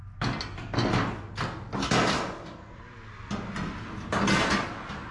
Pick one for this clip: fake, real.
real